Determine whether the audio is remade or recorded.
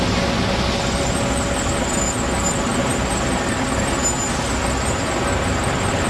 recorded